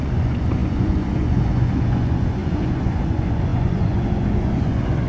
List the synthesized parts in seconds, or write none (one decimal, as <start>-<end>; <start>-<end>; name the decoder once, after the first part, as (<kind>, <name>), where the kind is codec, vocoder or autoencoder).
0.0-5.1 (vocoder, Vocos)